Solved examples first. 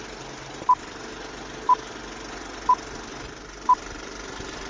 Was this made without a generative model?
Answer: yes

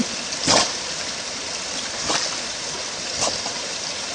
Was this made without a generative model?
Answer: yes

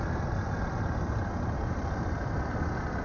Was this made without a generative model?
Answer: yes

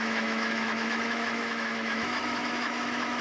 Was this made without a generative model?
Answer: no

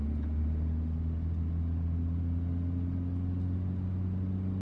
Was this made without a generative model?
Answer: yes